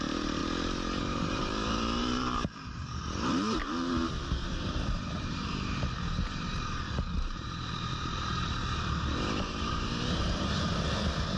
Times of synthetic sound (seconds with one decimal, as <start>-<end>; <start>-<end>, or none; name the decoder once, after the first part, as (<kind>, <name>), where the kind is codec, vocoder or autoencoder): 0.0-0.4 (vocoder, BigVGAN v2); 1.0-11.4